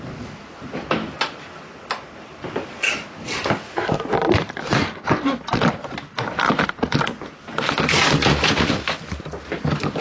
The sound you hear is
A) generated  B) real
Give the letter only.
B